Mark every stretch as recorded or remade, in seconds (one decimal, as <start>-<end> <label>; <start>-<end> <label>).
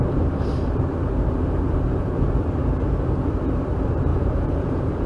0.0-4.1 recorded; 4.1-5.1 remade